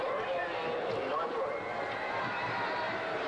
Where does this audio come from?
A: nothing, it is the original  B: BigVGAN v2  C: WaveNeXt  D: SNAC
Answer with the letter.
A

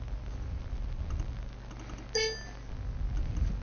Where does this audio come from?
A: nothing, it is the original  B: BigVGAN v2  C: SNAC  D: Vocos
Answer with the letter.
A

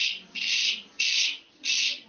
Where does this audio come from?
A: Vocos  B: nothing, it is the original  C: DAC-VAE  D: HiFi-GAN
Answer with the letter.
B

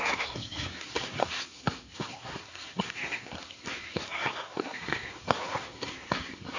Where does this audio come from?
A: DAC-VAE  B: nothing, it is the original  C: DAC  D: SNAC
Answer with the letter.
D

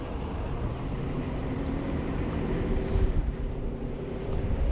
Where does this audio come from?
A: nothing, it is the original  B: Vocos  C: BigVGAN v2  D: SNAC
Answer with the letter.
C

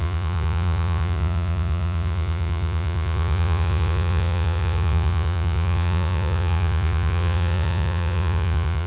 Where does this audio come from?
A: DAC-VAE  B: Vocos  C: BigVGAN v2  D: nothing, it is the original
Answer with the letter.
B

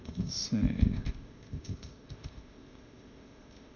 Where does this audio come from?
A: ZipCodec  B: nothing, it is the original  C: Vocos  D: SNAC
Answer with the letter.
A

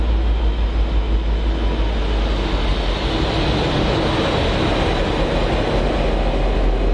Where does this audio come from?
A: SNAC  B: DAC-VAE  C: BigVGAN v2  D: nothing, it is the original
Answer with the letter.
D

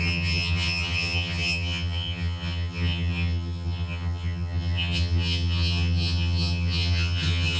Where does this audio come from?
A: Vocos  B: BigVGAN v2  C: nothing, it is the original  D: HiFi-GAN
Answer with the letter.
D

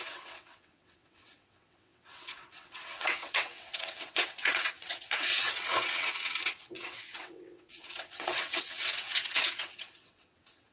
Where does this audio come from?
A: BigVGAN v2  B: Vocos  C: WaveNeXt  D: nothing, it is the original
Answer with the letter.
C